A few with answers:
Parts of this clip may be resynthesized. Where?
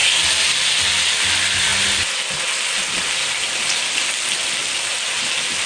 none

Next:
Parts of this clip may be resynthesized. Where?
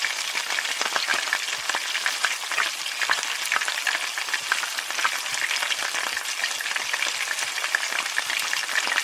none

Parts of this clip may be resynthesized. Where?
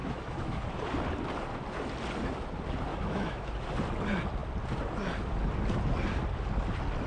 0.0-0.6 (autoencoder, DAC-VAE); 2.9-3.5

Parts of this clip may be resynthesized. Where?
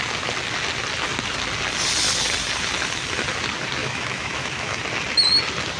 3.8-4.8 (autoencoder, DAC-VAE)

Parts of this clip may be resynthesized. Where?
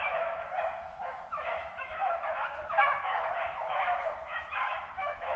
0.0-5.4 (autoencoder, DAC-VAE)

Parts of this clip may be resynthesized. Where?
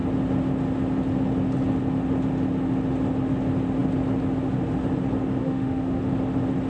5.4-6.0 (autoencoder, DAC-VAE)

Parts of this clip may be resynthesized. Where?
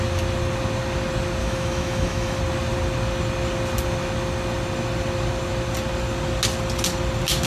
1.4-2.4 (autoencoder, DAC-VAE)